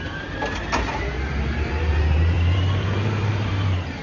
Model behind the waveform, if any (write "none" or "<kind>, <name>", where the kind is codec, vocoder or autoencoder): vocoder, BigVGAN v2